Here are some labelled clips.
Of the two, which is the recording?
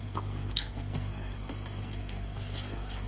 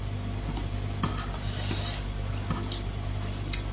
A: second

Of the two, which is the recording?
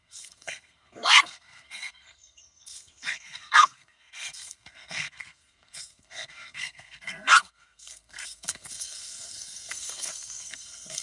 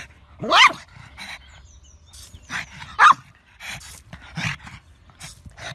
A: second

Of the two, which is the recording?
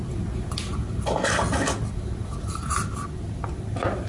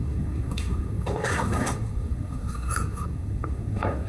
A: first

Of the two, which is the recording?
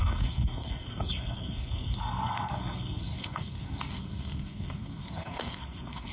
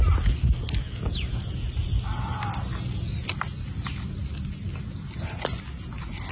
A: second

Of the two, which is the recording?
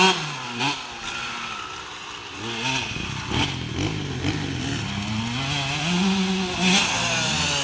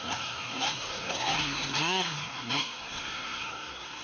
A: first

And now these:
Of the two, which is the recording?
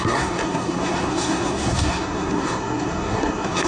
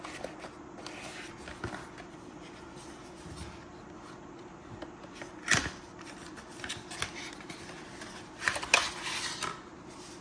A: second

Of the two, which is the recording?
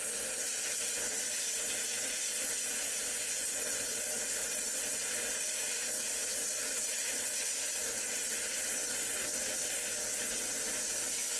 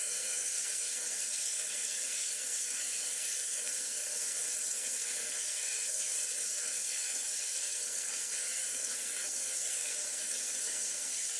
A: first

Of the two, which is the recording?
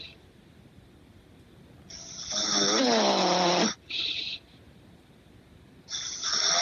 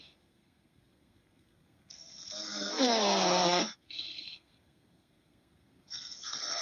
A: first